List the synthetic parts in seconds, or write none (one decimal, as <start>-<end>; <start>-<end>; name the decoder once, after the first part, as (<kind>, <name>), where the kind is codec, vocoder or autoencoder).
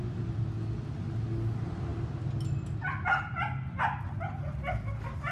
none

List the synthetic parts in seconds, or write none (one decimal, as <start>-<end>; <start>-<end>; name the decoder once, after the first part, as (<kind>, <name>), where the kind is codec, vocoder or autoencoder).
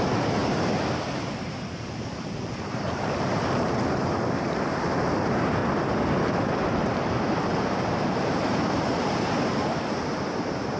0.0-5.6 (vocoder, BigVGAN v2); 6.3-10.8